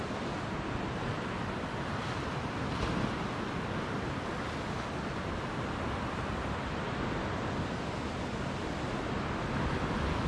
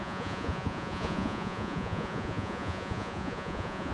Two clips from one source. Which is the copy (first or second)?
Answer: second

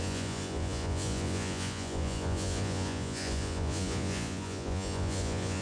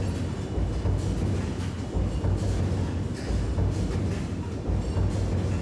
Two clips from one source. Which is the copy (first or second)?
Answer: first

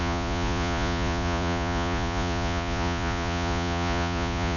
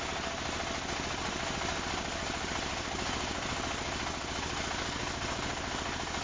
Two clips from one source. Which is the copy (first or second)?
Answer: first